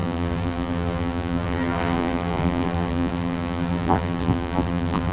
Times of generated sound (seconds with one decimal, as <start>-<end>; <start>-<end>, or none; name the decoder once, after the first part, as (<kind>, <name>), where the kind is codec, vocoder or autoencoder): 0.0-5.1 (vocoder, BigVGAN v2)

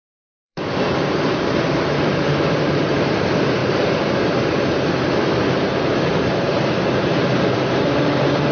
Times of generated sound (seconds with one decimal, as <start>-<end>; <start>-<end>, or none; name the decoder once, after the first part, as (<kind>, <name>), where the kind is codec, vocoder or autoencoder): 0.0-8.5 (vocoder, BigVGAN v2)

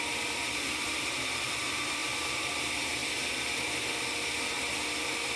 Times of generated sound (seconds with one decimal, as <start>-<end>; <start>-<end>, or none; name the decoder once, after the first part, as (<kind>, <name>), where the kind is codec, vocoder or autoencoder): 0.0-3.0 (vocoder, BigVGAN v2)

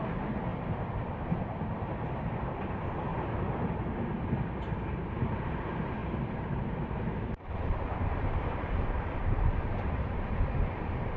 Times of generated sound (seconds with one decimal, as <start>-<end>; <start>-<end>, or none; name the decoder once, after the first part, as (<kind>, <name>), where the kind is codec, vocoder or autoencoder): 0.0-3.1 (vocoder, BigVGAN v2); 4.4-11.2

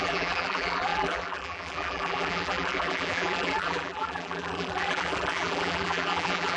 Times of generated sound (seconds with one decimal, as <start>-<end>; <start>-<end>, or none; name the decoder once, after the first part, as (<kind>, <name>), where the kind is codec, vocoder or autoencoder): 0.0-6.6 (vocoder, BigVGAN v2)

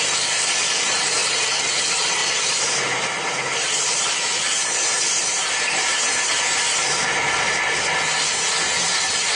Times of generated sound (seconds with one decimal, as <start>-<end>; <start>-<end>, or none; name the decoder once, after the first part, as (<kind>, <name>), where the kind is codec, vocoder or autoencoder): 0.0-9.3 (vocoder, BigVGAN v2)